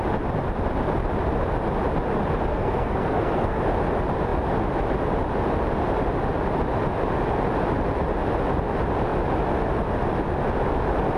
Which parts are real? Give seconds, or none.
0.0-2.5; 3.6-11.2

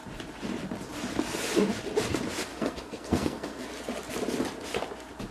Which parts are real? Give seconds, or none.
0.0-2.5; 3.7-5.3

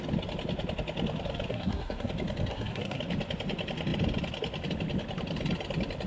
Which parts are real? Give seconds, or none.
0.0-1.5; 2.1-2.5; 3.0-6.1

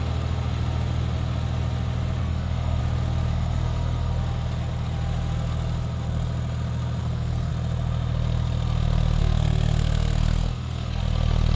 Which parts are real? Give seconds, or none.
0.0-2.2; 2.8-3.3; 4.2-7.0; 7.5-9.2; 11.0-11.6

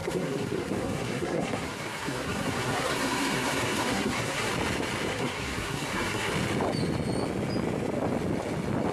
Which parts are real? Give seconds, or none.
4.5-5.1; 6.3-8.9

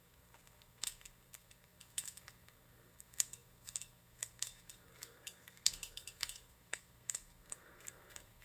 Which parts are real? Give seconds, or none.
none

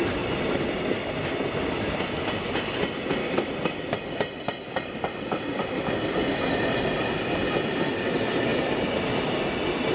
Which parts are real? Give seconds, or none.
0.0-9.9

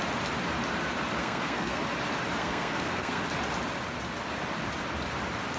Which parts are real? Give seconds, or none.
0.0-1.2; 1.8-2.4; 3.2-5.6